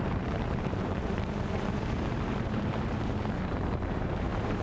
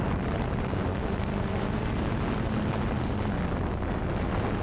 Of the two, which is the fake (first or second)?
first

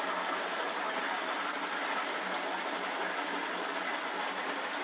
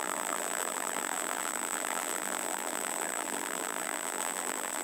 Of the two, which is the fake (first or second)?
second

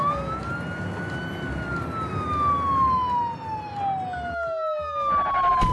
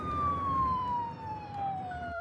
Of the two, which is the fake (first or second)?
second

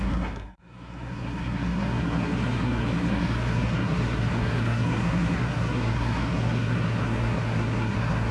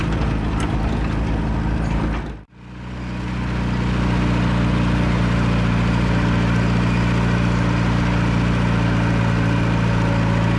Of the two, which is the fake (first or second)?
first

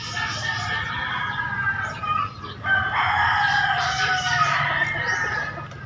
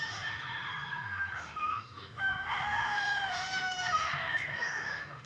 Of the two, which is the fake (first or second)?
second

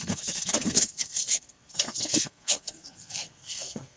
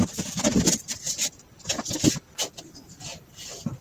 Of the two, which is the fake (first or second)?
first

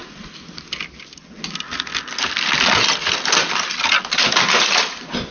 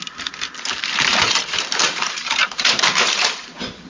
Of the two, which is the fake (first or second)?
second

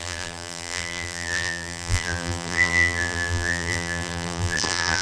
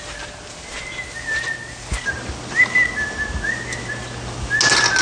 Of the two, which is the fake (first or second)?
first